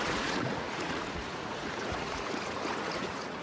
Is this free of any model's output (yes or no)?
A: no